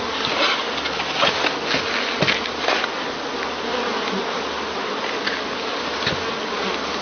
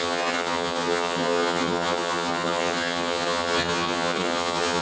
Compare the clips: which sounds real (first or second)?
first